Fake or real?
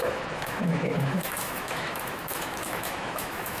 fake